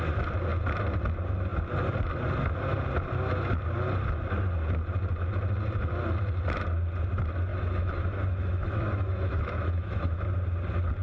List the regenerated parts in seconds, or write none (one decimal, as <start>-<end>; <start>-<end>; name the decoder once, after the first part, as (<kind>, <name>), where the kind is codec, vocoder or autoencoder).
7.5-10.2 (autoencoder, DAC-VAE)